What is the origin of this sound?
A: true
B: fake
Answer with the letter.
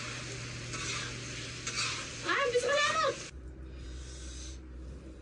A